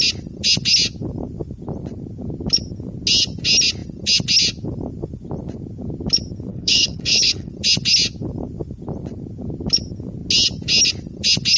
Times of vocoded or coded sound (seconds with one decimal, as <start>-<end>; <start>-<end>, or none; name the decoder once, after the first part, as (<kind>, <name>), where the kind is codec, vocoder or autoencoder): 6.5-7.5 (codec, HILCodec)